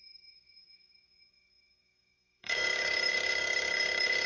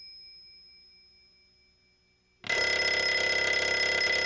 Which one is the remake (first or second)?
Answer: first